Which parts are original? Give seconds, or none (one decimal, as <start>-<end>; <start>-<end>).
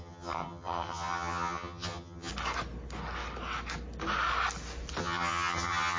2.3-5.0